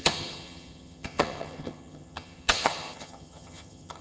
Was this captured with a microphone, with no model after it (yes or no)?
no